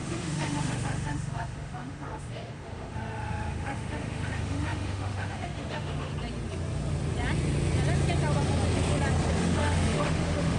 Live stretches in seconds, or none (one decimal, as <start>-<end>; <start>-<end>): 6.1-9.3